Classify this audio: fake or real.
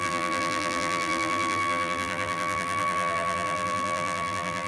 fake